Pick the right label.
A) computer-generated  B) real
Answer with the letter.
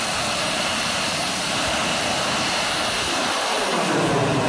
A